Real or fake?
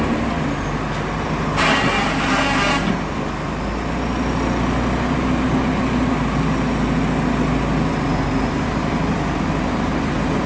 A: real